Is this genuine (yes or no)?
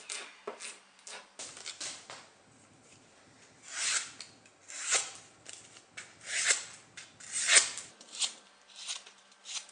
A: yes